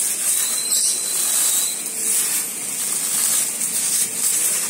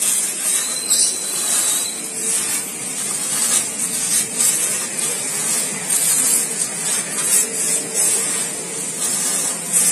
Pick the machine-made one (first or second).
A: second